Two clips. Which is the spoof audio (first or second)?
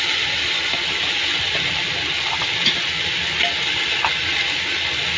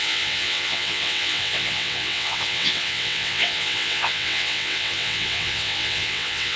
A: second